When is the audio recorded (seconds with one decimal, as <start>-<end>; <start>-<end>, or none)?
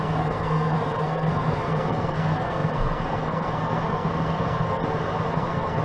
4.8-5.3